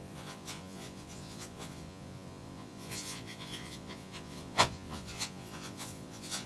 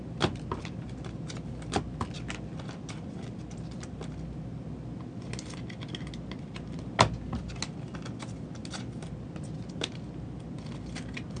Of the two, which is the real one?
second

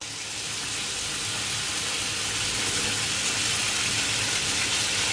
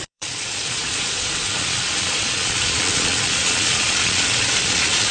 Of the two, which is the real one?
first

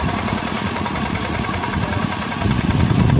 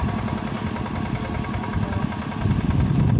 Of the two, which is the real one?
second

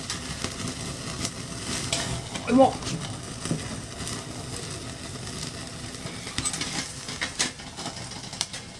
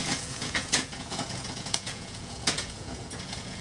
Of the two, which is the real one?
first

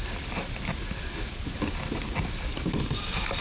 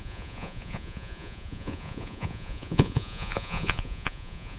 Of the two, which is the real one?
first